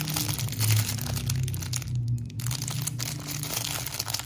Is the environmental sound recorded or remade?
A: recorded